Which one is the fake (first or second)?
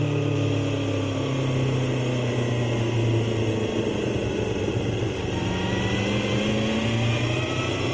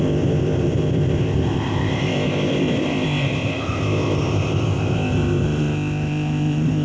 second